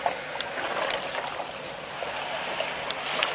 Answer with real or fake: real